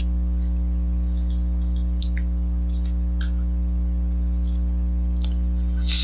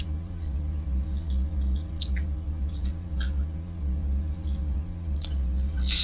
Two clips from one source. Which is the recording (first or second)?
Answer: first